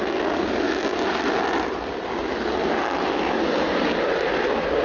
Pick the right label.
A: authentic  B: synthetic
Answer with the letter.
A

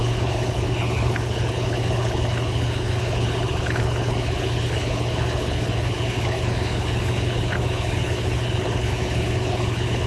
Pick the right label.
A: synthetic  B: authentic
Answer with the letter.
A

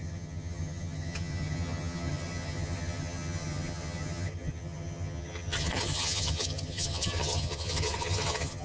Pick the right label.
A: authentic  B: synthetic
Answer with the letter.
B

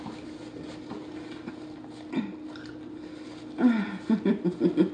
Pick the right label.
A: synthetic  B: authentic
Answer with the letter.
B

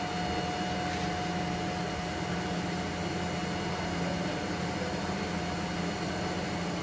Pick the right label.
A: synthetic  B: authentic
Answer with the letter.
B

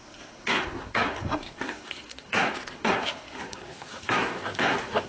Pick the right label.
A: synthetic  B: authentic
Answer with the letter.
A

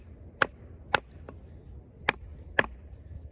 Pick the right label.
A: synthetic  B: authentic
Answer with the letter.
B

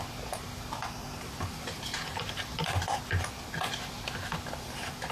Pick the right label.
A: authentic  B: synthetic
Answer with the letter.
A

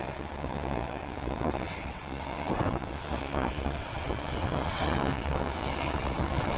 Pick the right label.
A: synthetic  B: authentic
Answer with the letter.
A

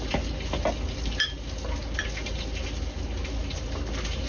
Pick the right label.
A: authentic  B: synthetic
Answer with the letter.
A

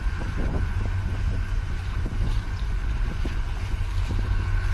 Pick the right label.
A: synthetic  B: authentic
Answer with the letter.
A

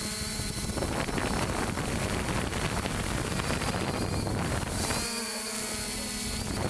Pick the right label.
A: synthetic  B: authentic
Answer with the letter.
B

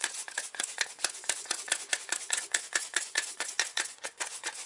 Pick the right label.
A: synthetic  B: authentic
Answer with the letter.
A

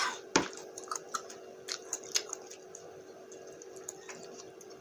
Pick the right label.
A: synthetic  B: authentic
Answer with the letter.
B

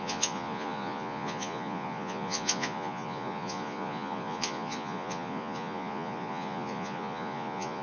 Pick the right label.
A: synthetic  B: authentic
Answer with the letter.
A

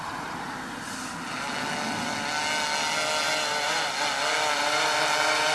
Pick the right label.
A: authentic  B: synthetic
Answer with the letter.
A